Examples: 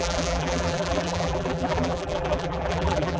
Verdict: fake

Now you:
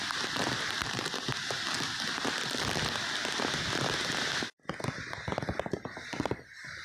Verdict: real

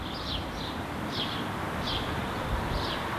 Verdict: fake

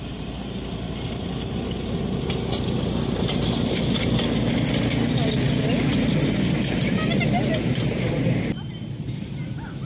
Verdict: real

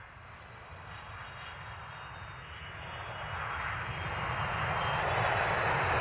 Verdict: real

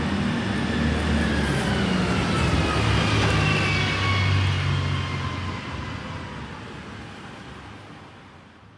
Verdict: real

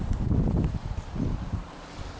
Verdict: fake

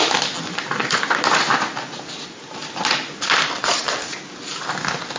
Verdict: real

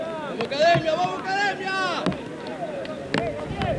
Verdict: real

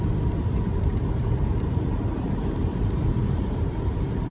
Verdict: fake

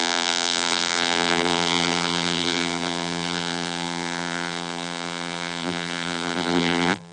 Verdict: fake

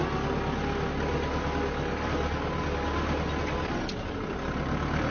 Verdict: real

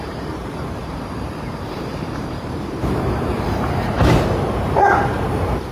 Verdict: fake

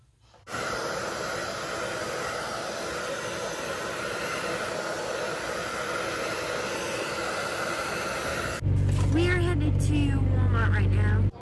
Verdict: real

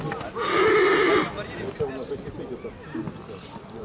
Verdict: real